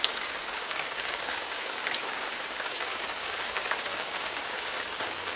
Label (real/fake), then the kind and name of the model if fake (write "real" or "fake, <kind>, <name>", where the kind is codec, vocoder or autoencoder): fake, codec, DAC